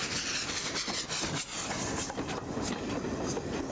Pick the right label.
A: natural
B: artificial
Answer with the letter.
A